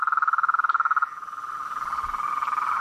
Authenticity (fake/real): real